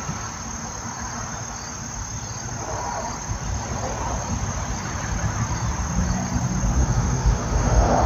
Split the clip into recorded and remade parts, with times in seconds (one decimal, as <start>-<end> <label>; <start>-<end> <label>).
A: 0.0-6.8 recorded; 6.8-8.1 remade